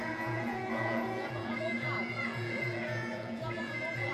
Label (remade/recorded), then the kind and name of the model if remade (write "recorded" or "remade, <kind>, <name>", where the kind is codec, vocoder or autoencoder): remade, vocoder, Vocos